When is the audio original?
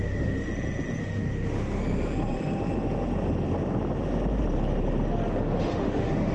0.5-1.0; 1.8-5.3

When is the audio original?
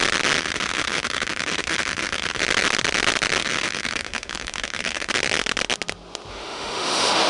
0.0-0.4; 2.4-3.4; 5.1-6.3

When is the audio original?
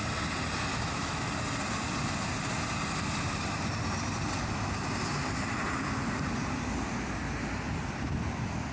0.0-0.7; 1.3-8.7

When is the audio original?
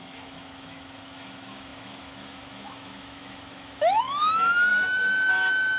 none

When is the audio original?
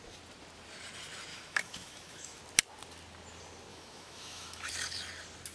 0.0-1.3; 2.4-3.7; 4.7-5.5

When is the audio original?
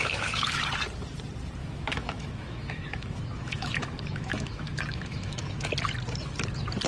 0.6-1.6; 5.7-6.9